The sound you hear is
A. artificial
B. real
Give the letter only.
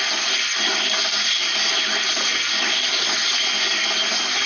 B